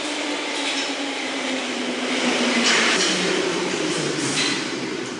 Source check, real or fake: fake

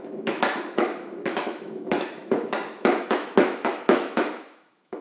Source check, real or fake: fake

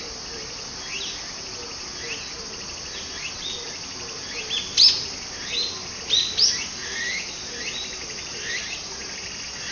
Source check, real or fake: real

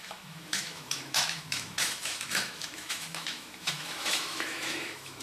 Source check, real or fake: fake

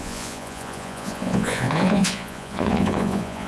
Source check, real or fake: fake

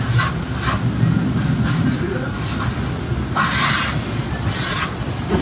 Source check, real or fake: real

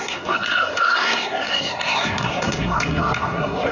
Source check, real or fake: fake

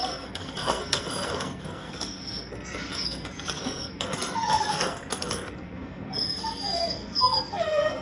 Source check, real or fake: fake